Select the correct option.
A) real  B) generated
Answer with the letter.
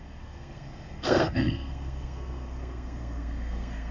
B